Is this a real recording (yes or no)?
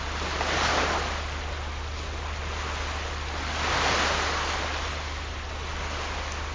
yes